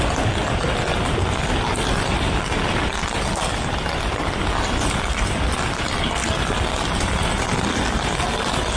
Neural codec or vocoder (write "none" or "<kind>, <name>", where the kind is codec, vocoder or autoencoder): none